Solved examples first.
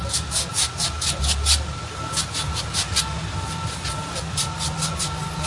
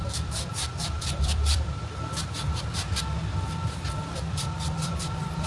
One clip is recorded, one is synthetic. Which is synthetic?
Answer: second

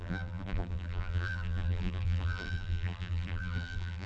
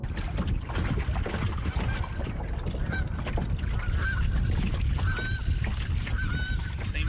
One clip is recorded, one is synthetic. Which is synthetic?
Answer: first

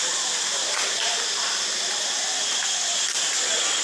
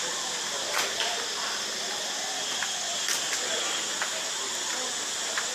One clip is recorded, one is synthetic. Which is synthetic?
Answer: first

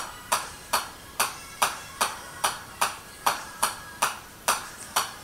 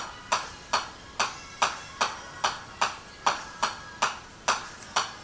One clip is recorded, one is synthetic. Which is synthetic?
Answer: first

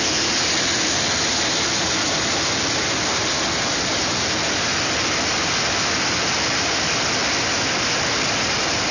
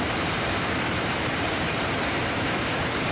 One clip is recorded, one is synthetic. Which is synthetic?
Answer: second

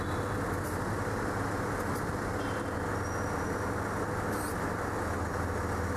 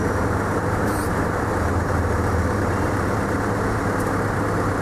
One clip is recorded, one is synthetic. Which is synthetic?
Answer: second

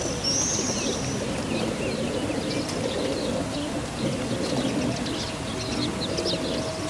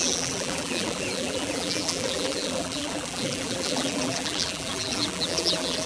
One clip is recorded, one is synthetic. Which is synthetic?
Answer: second